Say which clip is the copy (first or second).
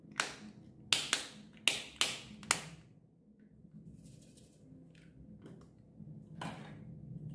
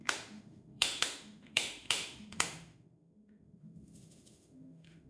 second